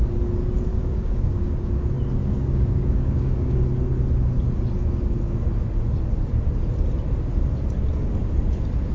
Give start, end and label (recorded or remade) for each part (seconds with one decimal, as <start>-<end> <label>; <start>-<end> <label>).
0.0-0.7 recorded; 0.7-1.8 remade; 1.8-2.2 recorded; 2.2-3.6 remade; 3.6-8.9 recorded